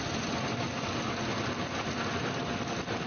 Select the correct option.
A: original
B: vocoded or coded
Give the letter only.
A